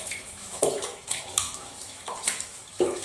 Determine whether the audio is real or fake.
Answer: fake